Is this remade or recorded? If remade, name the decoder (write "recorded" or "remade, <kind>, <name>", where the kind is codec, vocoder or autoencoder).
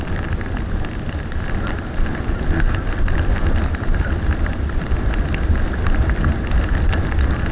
recorded